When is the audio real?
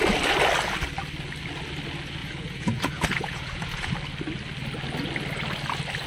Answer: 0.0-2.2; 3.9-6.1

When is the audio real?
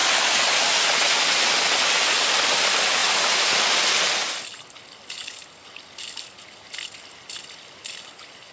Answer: 0.0-8.5